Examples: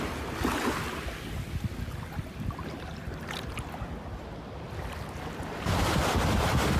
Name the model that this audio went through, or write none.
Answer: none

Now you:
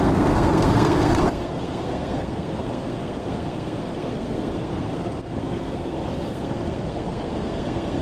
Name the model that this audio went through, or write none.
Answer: codec, SNAC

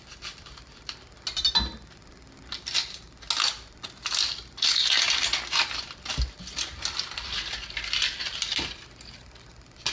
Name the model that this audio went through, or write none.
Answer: none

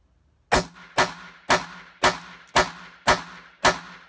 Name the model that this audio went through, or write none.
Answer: none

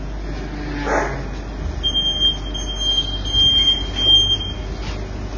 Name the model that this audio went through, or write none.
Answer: none